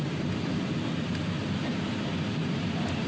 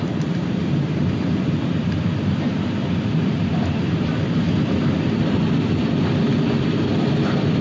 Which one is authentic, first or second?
first